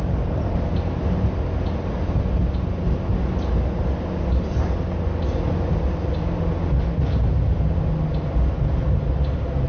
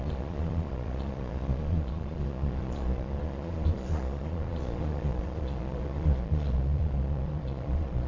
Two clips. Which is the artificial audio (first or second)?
second